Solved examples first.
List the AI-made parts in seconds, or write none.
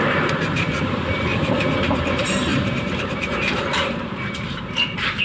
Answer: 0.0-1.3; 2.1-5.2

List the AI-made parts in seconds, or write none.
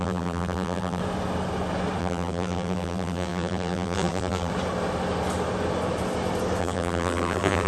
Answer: 0.0-1.0; 2.0-4.5; 6.6-7.7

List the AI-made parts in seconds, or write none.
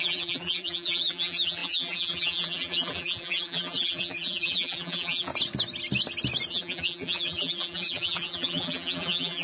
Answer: 0.0-5.3; 6.5-9.4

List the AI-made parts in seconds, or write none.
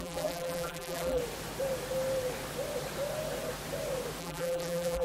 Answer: 0.0-1.2; 4.2-5.0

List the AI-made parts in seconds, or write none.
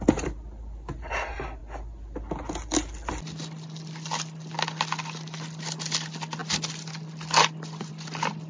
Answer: none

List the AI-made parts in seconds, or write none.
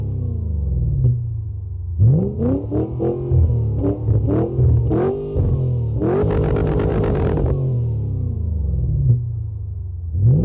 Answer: 6.9-9.1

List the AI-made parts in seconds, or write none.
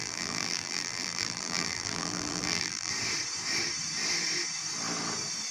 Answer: 0.0-2.9